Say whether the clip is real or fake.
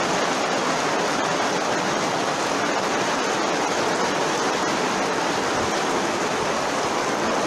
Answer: real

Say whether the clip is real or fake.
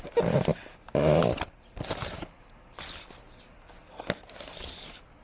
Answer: real